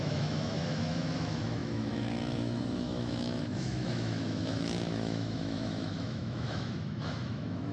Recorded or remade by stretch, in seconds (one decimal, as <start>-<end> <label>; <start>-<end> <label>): 0.0-7.7 remade